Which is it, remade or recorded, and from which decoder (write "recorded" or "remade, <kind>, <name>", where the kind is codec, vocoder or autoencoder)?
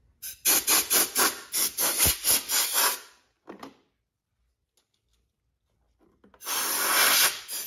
recorded